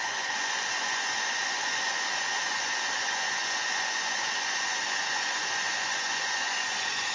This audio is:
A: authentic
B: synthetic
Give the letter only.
B